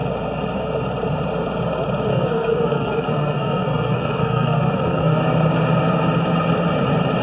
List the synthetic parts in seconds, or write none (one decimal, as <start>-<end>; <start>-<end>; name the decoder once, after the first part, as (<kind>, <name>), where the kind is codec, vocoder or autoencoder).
2.1-5.2 (codec, SNAC)